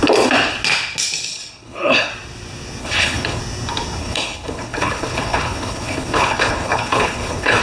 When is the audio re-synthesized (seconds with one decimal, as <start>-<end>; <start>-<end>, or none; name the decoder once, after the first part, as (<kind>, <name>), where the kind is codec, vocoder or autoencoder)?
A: 1.3-2.1 (codec, HILCodec); 2.8-3.4; 4.0-7.6